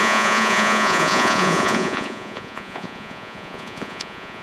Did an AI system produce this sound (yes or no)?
yes